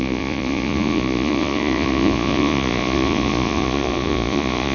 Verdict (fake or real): fake